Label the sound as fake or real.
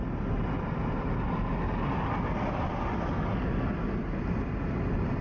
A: real